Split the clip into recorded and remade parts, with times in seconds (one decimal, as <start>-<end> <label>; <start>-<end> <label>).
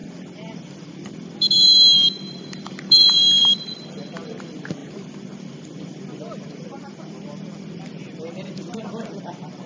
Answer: 0.0-9.7 remade